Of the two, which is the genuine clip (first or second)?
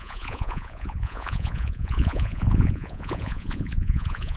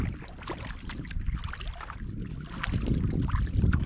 second